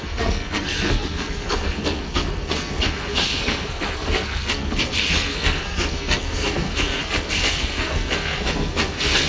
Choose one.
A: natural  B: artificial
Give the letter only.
B